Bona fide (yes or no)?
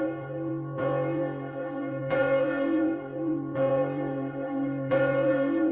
no